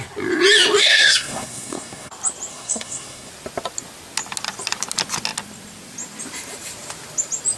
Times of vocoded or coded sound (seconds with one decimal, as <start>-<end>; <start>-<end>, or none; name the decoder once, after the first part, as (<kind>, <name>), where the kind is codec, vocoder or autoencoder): 0.8-2.1 (codec, SNAC); 2.5-3.3

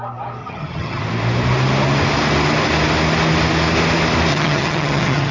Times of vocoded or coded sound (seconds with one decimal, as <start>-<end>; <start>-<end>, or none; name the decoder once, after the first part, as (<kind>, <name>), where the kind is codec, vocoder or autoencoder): 0.4-1.0 (vocoder, HiFi-GAN); 4.3-5.3

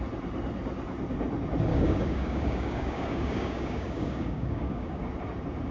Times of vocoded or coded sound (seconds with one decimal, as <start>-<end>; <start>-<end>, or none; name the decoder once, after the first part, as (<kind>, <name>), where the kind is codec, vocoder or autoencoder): 1.7-5.1 (codec, DAC)

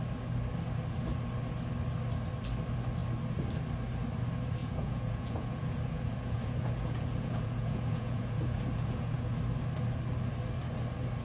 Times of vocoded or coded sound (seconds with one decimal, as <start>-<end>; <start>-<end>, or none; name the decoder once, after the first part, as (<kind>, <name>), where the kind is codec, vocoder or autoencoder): 4.6-9.3 (vocoder, Vocos)

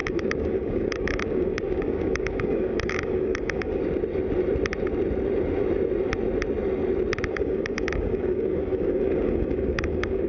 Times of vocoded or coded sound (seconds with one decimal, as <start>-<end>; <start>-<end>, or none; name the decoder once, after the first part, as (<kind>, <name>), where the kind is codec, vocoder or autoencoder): 0.0-3.8 (codec, DAC); 7.3-10.3

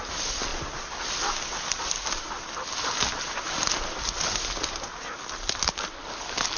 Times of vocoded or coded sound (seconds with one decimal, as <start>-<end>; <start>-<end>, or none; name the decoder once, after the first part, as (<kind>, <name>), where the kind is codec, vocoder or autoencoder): none

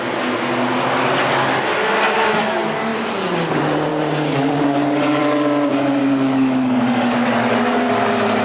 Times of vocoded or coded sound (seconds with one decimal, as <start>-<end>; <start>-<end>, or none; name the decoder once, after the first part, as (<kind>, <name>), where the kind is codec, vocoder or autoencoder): 3.9-5.2 (codec, DAC); 6.0-8.0